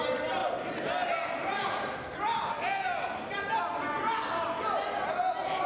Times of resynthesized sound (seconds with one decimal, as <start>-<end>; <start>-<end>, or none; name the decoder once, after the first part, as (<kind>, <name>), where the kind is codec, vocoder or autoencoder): none